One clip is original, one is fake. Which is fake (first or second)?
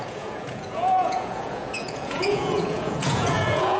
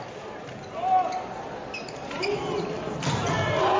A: first